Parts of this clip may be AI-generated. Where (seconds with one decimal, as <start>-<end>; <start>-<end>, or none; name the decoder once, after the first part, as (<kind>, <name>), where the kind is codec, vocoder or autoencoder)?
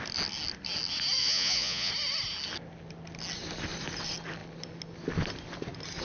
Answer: 1.2-1.9 (vocoder, Vocos)